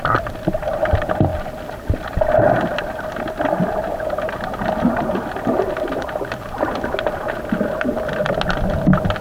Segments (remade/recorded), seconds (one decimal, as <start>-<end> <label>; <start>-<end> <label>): 0.0-9.2 recorded